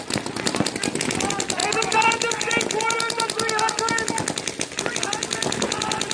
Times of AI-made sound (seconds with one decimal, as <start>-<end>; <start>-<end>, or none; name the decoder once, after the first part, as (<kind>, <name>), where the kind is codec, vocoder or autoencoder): none